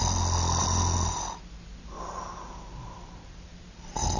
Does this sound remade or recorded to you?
recorded